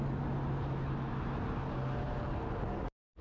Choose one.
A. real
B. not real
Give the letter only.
A